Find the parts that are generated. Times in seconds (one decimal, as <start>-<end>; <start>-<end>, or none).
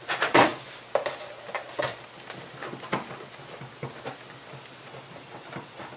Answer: 0.0-0.5; 1.5-1.9; 4.5-6.0